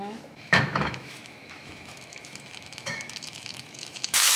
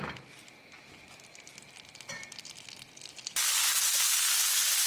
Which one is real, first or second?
second